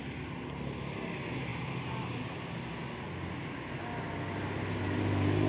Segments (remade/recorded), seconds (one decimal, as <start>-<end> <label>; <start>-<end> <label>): 0.0-5.5 recorded

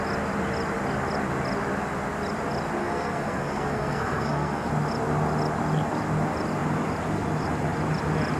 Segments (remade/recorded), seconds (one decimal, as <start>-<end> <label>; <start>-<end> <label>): 0.0-2.8 recorded; 2.8-4.7 remade; 4.7-8.4 recorded

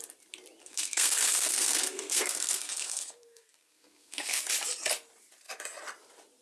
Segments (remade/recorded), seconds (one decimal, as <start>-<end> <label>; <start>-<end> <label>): 0.0-0.6 recorded; 0.6-4.4 remade; 4.4-6.4 recorded

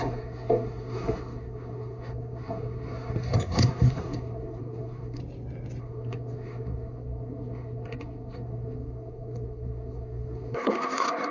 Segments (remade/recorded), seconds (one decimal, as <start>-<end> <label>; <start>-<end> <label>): 0.0-5.2 remade; 5.2-5.8 recorded; 5.8-11.3 remade